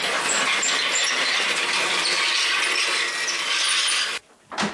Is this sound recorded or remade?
recorded